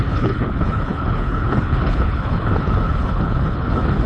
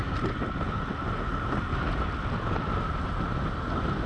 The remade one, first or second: first